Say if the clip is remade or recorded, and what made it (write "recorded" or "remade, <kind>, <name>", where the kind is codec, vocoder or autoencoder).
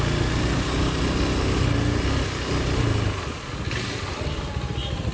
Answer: recorded